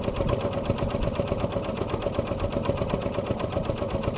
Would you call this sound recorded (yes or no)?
yes